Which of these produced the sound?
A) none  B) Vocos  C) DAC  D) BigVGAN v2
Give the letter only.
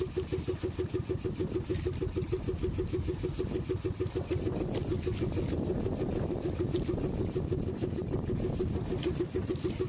A